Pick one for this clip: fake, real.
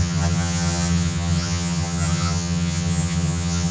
fake